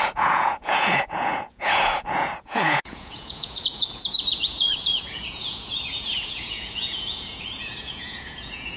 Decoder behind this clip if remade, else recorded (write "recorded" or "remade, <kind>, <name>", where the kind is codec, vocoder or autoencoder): remade, vocoder, Vocos